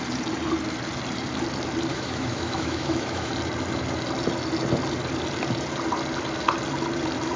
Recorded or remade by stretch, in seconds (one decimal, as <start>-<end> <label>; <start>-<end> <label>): 0.0-1.9 recorded; 1.9-3.3 remade; 3.3-7.4 recorded